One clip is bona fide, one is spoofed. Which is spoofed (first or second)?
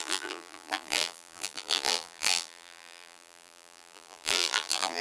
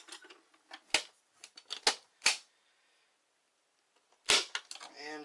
first